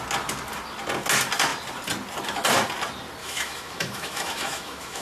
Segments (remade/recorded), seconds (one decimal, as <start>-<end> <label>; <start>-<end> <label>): 0.0-3.2 recorded; 3.2-5.0 remade

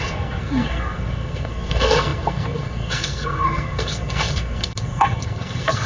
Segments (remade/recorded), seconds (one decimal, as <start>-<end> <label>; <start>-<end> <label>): 0.0-5.9 remade